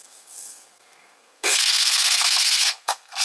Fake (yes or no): yes